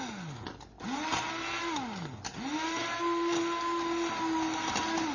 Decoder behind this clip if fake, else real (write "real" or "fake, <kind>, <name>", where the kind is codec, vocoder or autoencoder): real